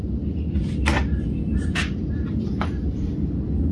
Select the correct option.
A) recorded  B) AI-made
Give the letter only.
A